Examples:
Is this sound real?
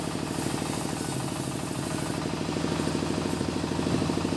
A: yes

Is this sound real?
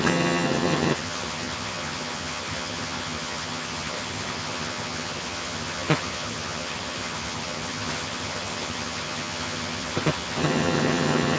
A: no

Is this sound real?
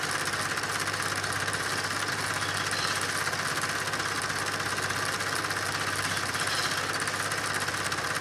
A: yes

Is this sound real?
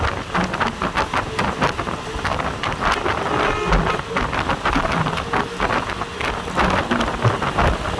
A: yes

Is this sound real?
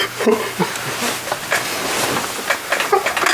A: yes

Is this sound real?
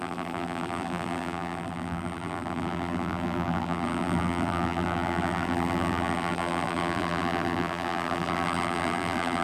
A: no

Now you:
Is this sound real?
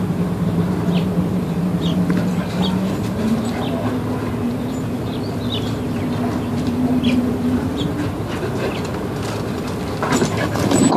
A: yes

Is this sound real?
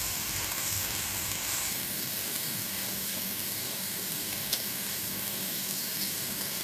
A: no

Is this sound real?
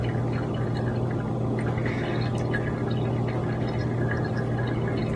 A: yes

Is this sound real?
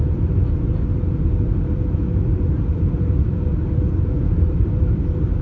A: no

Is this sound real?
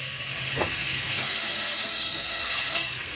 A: no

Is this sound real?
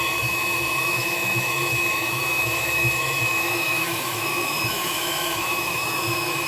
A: no